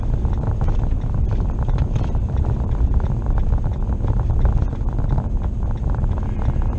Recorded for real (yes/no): yes